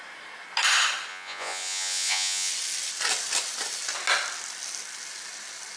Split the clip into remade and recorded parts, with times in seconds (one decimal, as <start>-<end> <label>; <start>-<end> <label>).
0.0-1.1 recorded; 1.1-2.5 remade; 2.5-5.8 recorded